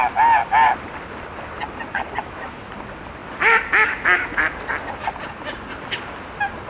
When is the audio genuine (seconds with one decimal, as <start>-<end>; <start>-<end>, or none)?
0.0-2.2; 2.7-6.7